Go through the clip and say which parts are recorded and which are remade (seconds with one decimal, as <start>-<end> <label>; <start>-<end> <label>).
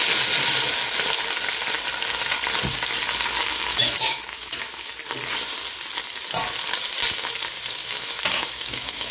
0.0-3.5 recorded; 3.5-5.0 remade; 5.0-7.8 recorded; 7.8-9.1 remade